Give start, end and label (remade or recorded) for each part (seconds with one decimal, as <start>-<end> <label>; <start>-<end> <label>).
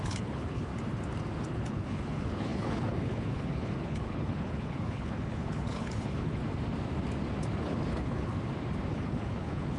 0.0-0.7 remade; 0.7-1.5 recorded; 1.5-6.4 remade; 6.4-7.6 recorded; 7.6-8.3 remade; 8.3-8.9 recorded; 8.9-9.8 remade